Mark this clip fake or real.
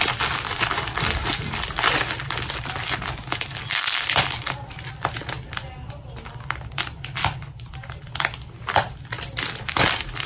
real